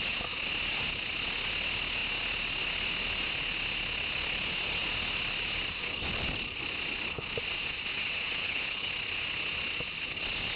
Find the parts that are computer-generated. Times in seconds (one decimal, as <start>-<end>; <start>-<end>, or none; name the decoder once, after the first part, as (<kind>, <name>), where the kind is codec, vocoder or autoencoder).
8.4-8.9 (codec, HILCodec)